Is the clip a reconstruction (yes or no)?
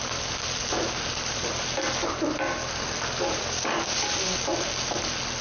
no